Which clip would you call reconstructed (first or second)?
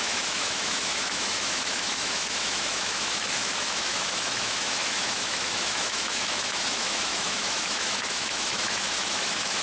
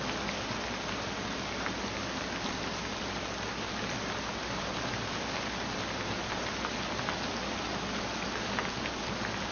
first